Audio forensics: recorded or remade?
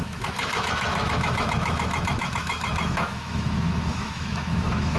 remade